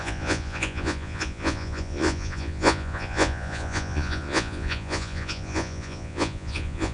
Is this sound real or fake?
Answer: fake